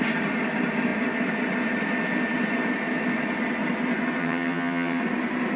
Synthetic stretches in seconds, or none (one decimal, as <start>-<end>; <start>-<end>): 4.2-5.0